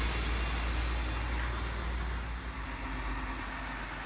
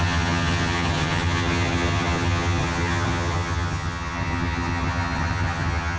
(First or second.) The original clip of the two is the first